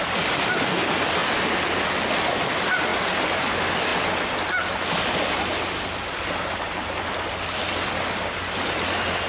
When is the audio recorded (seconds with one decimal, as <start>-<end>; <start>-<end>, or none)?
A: 0.0-9.3